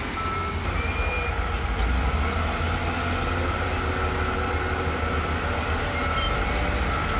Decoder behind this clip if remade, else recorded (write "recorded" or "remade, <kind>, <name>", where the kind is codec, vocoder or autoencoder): recorded